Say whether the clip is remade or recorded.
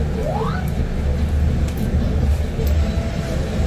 recorded